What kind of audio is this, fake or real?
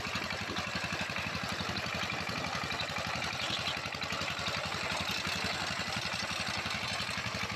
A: real